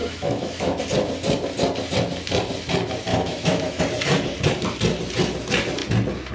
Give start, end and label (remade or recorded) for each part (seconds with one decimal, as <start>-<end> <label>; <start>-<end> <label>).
0.0-0.8 remade; 0.8-3.1 recorded; 3.1-3.8 remade; 3.8-6.3 recorded